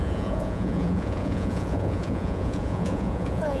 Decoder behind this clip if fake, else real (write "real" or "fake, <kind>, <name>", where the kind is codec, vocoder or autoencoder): fake, vocoder, Vocos